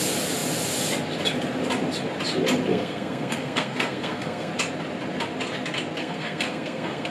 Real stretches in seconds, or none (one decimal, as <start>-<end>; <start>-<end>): 0.0-2.7; 4.5-6.0